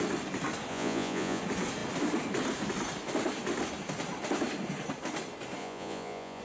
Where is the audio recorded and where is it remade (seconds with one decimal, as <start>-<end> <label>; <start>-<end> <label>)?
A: 0.0-0.7 recorded; 0.7-1.4 remade; 1.4-5.6 recorded; 5.6-6.4 remade